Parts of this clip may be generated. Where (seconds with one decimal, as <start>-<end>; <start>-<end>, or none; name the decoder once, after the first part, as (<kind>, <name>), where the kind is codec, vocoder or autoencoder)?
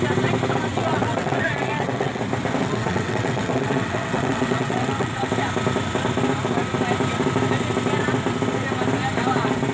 0.7-2.2 (vocoder, WaveNeXt); 2.6-5.3